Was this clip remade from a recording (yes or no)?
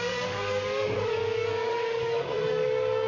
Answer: yes